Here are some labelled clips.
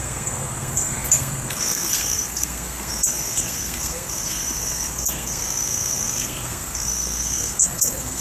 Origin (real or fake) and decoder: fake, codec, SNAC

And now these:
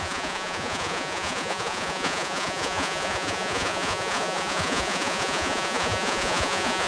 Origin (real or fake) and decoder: fake, vocoder, Vocos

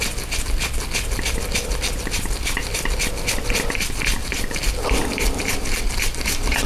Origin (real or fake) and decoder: real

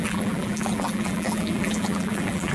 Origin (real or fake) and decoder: fake, vocoder, BigVGAN v2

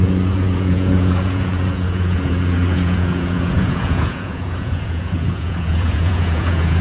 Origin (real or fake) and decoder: fake, vocoder, Vocos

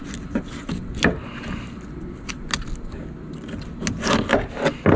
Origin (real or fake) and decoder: real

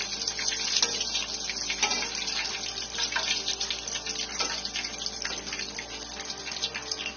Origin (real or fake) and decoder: real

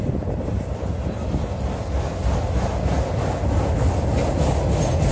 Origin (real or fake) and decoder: real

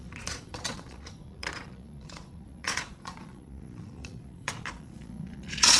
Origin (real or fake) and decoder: fake, vocoder, Vocos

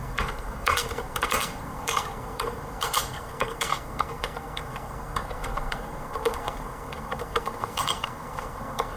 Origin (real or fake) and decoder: fake, codec, SNAC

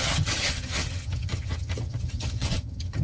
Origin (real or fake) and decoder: fake, vocoder, HiFi-GAN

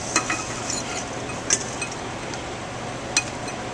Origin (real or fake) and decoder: real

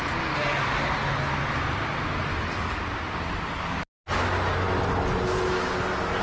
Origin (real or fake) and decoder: real